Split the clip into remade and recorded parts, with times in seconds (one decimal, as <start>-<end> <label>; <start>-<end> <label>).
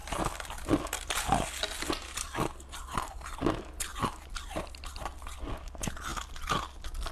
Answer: 0.0-7.1 recorded